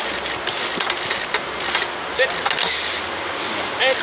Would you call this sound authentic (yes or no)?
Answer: yes